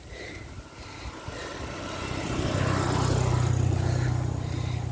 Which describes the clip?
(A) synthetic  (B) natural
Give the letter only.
B